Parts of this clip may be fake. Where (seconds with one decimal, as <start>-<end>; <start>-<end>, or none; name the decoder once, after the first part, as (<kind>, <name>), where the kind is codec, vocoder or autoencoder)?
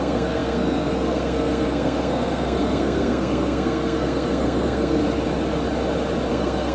0.0-5.0 (codec, SNAC); 6.3-6.7